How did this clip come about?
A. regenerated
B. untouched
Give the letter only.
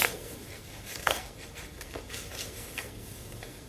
A